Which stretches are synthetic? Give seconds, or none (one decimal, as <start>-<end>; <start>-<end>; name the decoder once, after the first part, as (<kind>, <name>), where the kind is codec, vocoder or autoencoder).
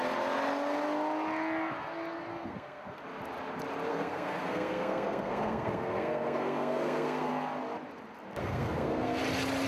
2.3-3.0 (codec, SNAC); 3.9-7.3; 8.4-9.2